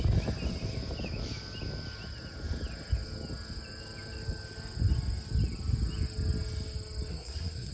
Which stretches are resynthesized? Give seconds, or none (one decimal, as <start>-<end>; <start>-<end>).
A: 7.1-7.7